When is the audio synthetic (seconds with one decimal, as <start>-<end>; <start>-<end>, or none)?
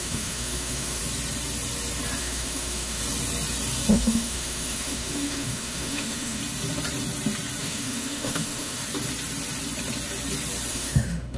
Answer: 0.0-1.0; 2.2-3.0; 3.9-6.4; 7.6-8.8; 10.7-11.4